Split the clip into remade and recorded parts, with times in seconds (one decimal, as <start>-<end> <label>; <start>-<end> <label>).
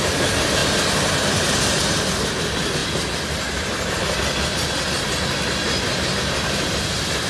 0.0-7.3 recorded